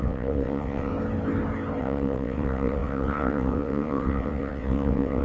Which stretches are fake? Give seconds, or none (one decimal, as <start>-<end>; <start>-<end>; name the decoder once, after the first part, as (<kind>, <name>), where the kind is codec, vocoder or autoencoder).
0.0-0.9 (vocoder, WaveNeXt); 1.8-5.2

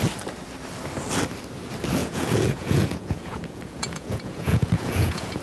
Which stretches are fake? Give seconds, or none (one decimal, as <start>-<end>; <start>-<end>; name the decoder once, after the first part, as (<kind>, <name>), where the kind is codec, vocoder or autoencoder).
2.0-5.4 (vocoder, Vocos)

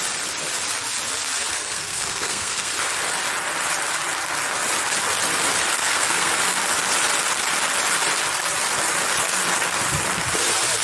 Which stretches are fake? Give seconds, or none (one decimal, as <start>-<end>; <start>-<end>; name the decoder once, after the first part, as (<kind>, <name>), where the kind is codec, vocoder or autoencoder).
1.5-2.7 (codec, SNAC); 5.7-6.3